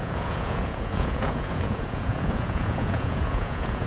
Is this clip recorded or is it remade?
remade